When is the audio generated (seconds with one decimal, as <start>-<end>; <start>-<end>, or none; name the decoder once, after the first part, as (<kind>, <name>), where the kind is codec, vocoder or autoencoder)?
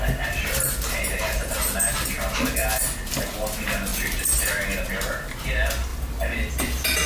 none